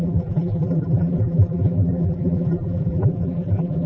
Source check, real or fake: fake